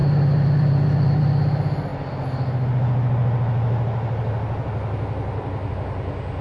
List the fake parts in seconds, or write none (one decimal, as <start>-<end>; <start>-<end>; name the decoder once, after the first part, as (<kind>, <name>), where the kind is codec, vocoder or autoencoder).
0.0-1.2 (vocoder, BigVGAN v2)